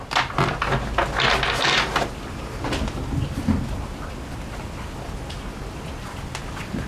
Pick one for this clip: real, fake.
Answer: real